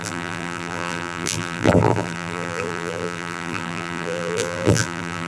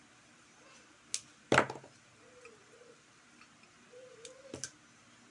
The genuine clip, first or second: second